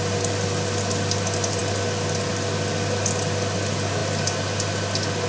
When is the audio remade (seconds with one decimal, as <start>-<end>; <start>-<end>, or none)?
none